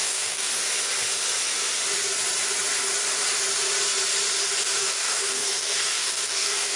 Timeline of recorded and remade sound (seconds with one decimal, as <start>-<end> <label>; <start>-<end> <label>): 0.0-0.5 remade; 0.5-4.6 recorded; 4.6-6.8 remade

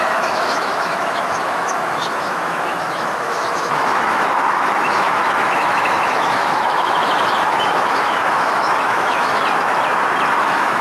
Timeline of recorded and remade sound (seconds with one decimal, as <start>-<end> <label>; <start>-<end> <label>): 0.0-9.4 remade; 9.4-10.4 recorded; 10.4-10.8 remade

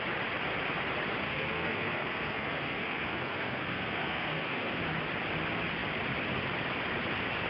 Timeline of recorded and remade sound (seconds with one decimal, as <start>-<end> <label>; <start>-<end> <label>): 0.0-1.2 recorded; 1.2-4.8 remade; 4.8-7.5 recorded

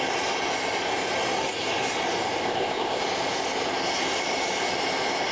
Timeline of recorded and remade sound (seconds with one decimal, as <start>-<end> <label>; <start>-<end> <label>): 0.0-2.4 recorded; 2.4-3.0 remade; 3.0-5.3 recorded

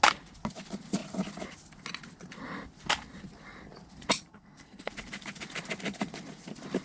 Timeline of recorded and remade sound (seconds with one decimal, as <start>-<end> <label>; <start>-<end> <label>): 0.0-4.3 recorded; 4.3-4.9 remade; 4.9-6.8 recorded